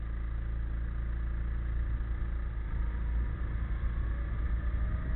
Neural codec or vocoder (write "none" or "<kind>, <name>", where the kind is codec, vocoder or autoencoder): none